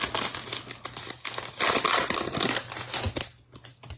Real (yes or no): yes